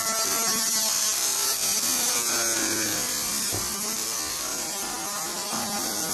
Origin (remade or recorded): recorded